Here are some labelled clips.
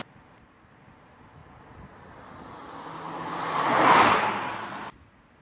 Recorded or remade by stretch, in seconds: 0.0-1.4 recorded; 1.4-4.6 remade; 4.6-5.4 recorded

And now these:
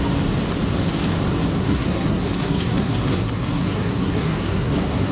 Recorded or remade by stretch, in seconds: 0.0-1.6 recorded; 1.6-5.1 remade